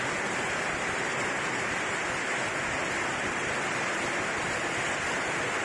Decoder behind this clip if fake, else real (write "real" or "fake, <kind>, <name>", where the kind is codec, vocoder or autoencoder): real